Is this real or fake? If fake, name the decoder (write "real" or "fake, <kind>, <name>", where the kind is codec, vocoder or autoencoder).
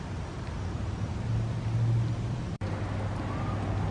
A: real